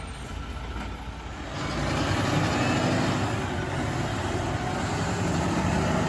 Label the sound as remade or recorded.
recorded